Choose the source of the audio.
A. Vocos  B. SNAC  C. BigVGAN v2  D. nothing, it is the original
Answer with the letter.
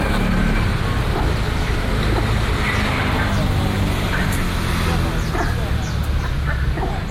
D